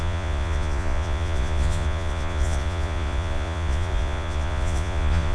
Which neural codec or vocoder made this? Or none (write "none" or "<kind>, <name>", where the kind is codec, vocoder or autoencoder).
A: vocoder, Vocos